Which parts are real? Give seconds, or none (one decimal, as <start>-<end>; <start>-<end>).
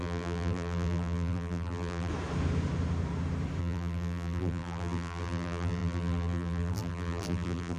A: 2.1-3.6